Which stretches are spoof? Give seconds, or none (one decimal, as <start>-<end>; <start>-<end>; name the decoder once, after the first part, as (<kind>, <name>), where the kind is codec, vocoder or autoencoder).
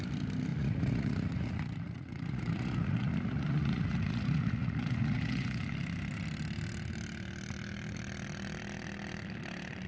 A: 0.5-5.6 (vocoder, Vocos)